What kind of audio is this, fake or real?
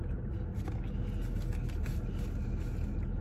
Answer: real